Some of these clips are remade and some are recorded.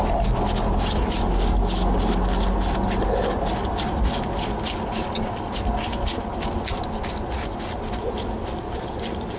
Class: recorded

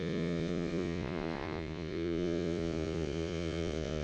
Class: remade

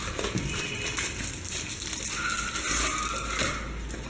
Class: recorded